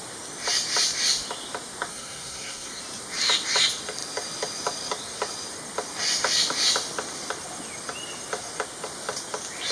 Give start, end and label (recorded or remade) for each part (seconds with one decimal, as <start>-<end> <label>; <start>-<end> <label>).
0.0-1.9 recorded; 1.9-2.8 remade; 2.8-9.7 recorded